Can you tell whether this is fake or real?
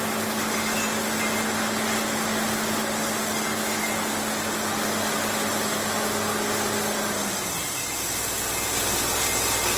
real